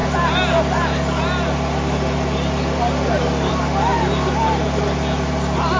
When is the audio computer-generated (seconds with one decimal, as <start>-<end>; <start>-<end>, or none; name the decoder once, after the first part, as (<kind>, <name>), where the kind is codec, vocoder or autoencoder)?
none